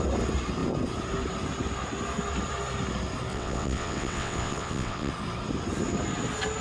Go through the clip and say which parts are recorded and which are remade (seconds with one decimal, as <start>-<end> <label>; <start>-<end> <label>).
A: 0.0-3.3 recorded; 3.3-5.1 remade; 5.1-6.6 recorded

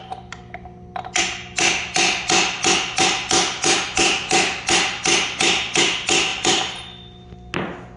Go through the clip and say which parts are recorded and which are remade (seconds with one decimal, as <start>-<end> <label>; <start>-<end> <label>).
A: 0.0-8.0 recorded

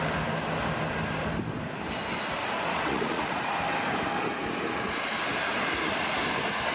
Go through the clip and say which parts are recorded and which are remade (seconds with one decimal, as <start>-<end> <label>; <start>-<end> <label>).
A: 0.0-2.4 recorded; 2.4-3.5 remade; 3.5-6.7 recorded

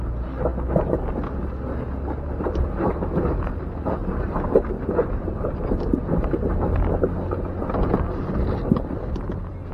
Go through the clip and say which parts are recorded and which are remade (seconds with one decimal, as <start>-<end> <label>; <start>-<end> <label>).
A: 0.0-4.0 recorded; 4.0-4.5 remade; 4.5-9.7 recorded

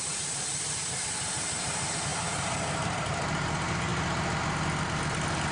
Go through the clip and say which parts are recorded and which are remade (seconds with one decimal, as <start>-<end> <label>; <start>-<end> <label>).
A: 0.0-3.9 remade; 3.9-5.1 recorded; 5.1-5.5 remade

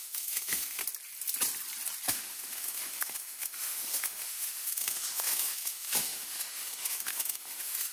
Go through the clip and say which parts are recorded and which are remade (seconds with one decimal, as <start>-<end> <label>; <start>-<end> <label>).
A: 0.0-0.8 remade; 0.8-2.1 recorded; 2.1-7.9 remade

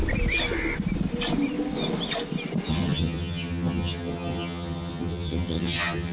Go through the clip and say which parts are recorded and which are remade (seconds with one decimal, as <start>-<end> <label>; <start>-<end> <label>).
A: 0.0-2.7 recorded; 2.7-6.1 remade

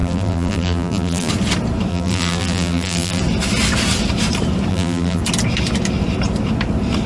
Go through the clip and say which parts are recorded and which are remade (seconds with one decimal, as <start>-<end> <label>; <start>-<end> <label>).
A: 0.0-1.3 remade; 1.3-1.9 recorded; 1.9-3.2 remade; 3.2-4.7 recorded; 4.7-5.2 remade; 5.2-7.1 recorded